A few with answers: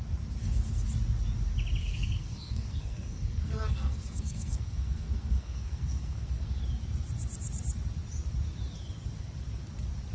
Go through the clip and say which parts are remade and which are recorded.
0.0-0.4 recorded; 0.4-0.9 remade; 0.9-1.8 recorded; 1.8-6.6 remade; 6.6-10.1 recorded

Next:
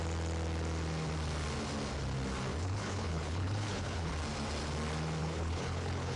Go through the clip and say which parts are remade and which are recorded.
0.0-2.5 recorded; 2.5-4.1 remade; 4.1-5.2 recorded; 5.2-6.2 remade

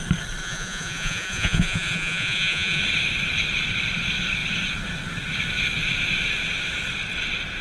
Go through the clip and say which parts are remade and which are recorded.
0.0-0.4 recorded; 0.4-2.8 remade; 2.8-7.6 recorded

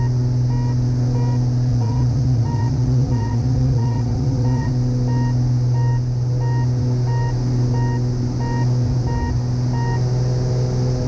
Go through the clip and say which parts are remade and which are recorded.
0.0-1.7 recorded; 1.7-4.7 remade; 4.7-11.1 recorded

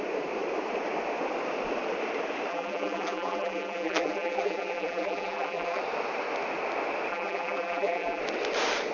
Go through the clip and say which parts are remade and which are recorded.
0.0-2.5 recorded; 2.5-5.8 remade; 5.8-7.1 recorded; 7.1-8.2 remade; 8.2-8.9 recorded

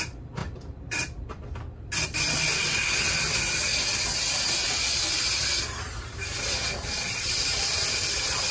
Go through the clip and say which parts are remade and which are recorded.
0.0-0.4 recorded; 0.4-4.6 remade; 4.6-8.5 recorded

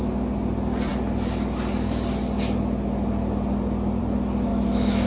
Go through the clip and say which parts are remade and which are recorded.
0.0-4.5 recorded; 4.5-5.1 remade

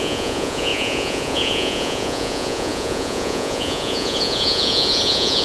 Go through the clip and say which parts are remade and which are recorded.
0.0-5.4 remade